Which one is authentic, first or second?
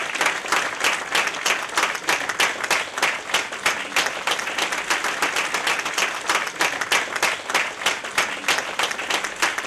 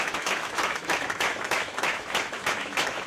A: first